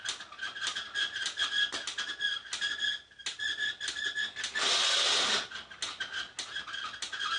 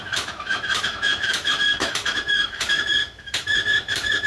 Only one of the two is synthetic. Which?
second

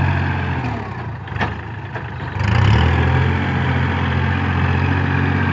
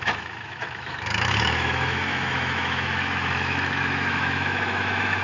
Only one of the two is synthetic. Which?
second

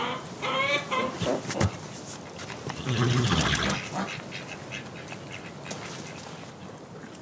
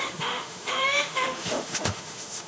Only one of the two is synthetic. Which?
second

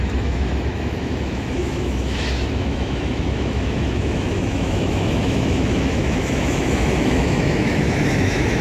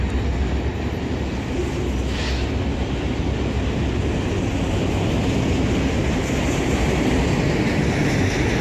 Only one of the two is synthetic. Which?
first